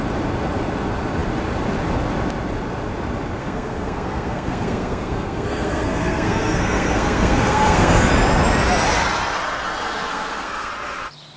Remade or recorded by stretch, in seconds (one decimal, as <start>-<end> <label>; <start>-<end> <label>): 0.0-3.4 recorded; 3.4-8.1 remade; 8.1-10.1 recorded; 10.1-10.7 remade; 10.7-11.4 recorded